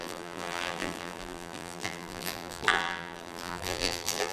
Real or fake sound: fake